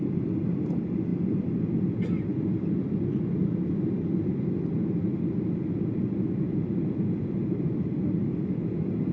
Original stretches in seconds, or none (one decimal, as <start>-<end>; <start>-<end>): 0.0-9.1